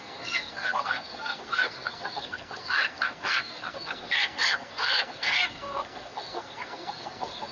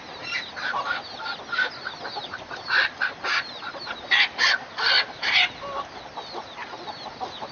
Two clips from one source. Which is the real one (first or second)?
second